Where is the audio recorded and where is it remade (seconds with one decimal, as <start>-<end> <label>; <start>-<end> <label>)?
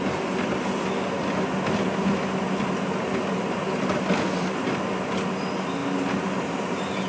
0.0-3.3 recorded; 3.3-4.0 remade; 4.0-7.1 recorded